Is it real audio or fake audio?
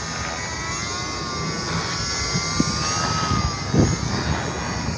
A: real